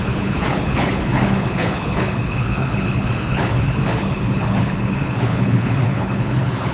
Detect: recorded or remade remade